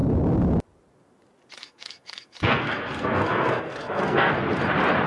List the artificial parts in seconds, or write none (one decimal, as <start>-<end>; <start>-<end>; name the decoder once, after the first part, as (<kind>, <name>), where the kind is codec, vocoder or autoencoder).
1.6-4.3 (codec, SNAC)